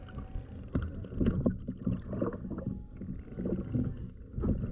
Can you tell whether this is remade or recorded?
recorded